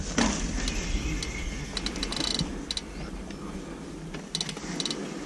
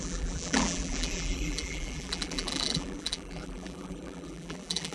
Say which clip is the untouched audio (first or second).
first